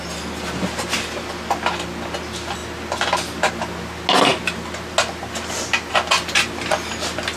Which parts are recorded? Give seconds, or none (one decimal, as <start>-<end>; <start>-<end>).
0.0-7.4